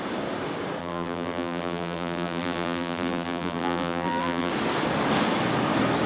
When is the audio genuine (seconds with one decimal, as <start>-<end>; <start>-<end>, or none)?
0.0-0.8; 4.5-6.1